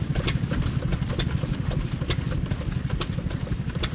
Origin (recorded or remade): recorded